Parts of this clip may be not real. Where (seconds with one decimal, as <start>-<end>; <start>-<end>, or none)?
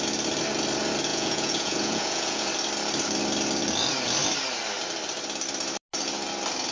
1.1-2.5